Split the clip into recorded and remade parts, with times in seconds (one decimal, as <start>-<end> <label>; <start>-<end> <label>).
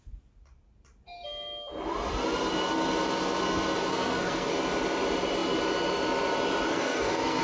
0.0-3.9 recorded; 3.9-4.5 remade; 4.5-6.7 recorded; 6.7-7.4 remade